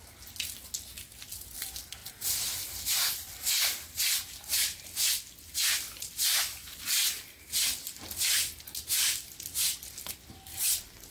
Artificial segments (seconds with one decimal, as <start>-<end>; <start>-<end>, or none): none